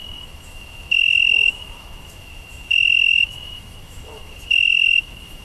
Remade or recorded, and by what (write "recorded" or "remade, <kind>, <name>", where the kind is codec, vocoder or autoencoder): remade, autoencoder, DAC-VAE